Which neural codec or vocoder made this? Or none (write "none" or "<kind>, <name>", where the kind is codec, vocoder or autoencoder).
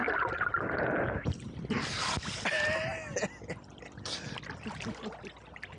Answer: none